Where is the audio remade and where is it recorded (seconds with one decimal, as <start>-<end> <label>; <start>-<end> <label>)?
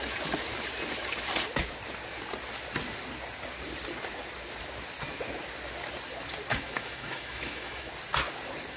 0.0-6.5 recorded; 6.5-7.9 remade; 7.9-8.8 recorded